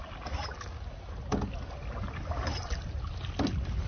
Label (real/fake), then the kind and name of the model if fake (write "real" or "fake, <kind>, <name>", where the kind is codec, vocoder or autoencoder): real